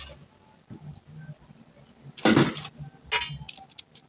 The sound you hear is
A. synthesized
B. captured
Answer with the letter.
B